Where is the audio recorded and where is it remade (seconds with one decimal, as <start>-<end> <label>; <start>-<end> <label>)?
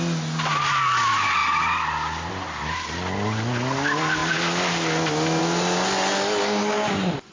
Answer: 0.0-7.3 recorded